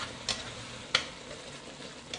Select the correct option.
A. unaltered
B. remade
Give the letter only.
A